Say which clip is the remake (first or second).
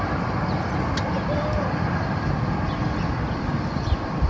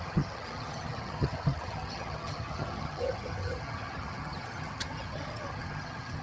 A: second